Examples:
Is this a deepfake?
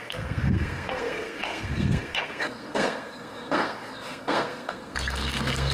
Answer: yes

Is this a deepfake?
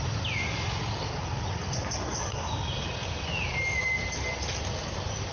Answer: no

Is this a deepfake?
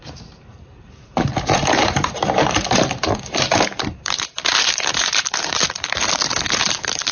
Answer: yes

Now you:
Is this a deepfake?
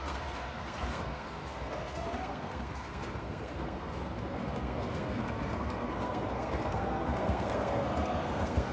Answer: yes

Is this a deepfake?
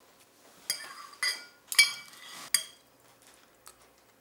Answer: no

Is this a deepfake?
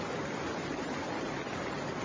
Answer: no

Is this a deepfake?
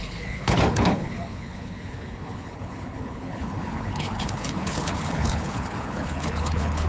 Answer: yes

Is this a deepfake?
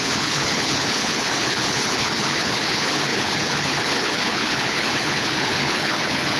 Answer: yes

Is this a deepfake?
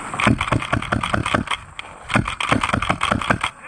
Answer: no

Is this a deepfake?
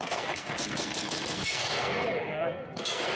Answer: yes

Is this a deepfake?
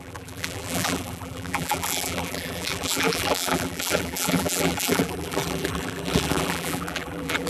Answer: yes